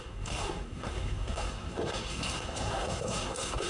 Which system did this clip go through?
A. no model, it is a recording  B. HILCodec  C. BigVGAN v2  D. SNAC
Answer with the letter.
D